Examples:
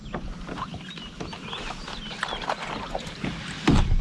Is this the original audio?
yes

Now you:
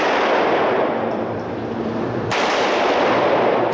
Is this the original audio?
no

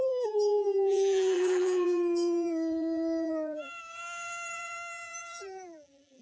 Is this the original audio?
no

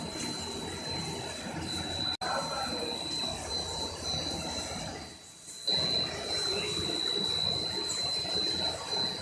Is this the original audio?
yes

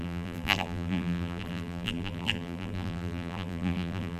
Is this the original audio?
no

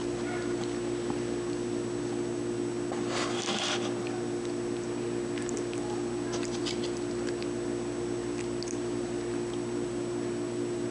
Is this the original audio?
yes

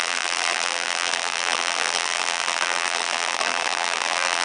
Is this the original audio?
no